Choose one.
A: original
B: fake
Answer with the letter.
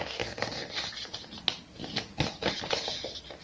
A